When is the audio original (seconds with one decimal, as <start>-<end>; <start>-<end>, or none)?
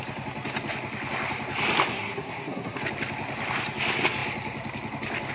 0.0-1.9; 2.8-5.3